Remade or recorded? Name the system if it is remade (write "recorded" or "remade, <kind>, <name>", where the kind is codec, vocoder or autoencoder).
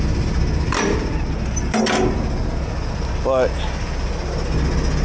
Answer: recorded